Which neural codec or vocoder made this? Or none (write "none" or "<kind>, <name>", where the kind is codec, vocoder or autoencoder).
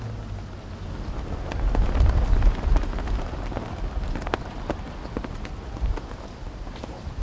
none